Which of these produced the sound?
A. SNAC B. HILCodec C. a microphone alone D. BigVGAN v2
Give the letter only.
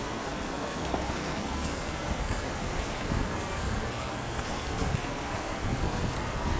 A